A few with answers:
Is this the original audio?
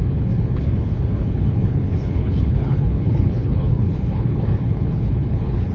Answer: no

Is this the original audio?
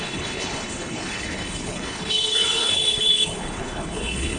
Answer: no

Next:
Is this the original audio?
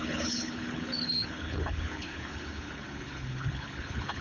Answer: no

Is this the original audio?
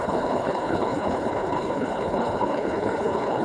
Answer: no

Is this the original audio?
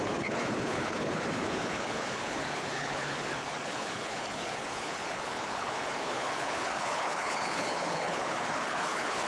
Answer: no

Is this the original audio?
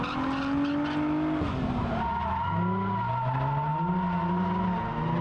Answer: yes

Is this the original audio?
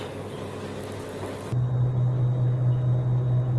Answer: yes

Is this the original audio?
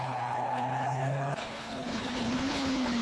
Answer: no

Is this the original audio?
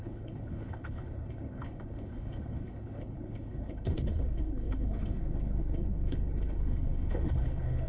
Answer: no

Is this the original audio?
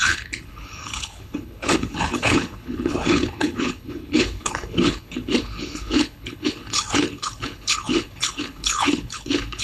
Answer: no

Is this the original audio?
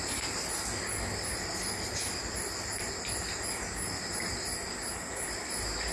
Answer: yes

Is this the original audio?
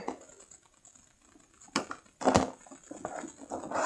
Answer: yes